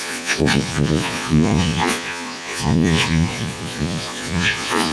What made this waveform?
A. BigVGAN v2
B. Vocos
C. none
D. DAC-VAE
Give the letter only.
B